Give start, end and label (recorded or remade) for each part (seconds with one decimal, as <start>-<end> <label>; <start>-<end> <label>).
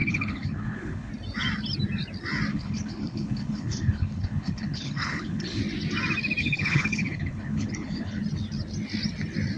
0.0-1.1 remade; 1.1-2.5 recorded; 2.5-5.6 remade; 5.6-6.4 recorded; 6.4-8.2 remade; 8.2-9.6 recorded